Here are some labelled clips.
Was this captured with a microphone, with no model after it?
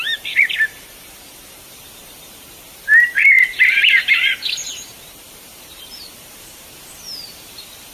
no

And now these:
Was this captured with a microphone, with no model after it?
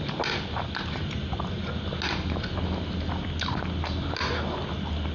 yes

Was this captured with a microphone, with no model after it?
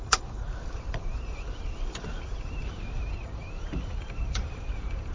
no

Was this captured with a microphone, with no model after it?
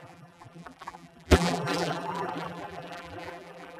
no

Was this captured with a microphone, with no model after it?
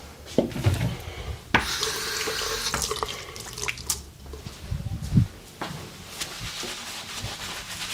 yes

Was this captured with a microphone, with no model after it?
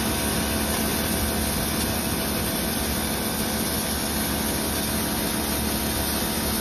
yes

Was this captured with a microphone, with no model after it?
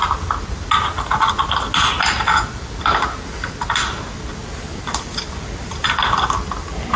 yes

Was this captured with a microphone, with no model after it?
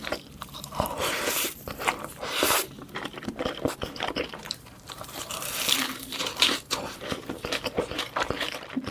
no